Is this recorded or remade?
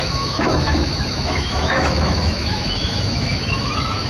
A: remade